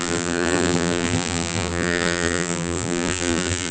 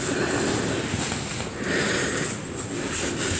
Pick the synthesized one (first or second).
first